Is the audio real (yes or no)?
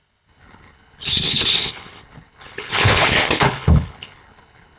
no